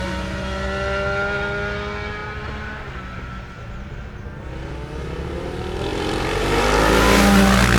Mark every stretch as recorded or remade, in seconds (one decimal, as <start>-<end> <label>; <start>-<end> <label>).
0.0-5.9 recorded; 5.9-6.8 remade; 6.8-7.8 recorded